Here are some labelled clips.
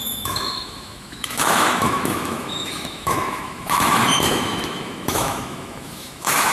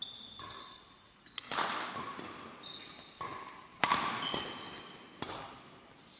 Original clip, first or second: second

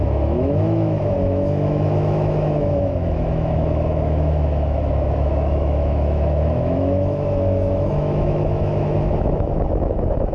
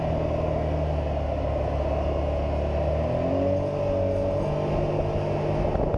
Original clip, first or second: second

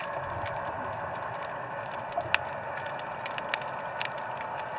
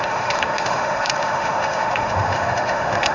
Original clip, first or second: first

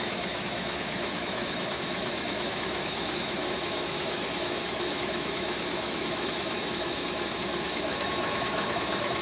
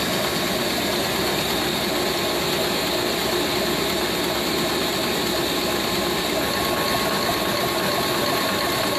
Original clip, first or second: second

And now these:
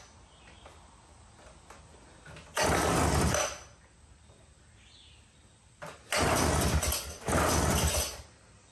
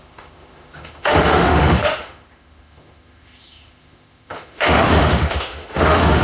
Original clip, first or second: first